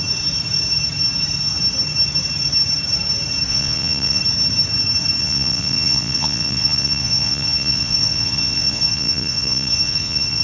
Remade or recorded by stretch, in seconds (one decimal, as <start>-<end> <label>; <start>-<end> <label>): 0.0-3.5 recorded; 3.5-4.2 remade; 4.2-5.2 recorded; 5.2-10.4 remade